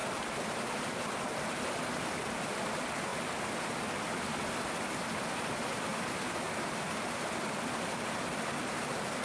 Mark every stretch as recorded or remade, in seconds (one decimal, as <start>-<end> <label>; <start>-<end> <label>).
0.0-9.2 recorded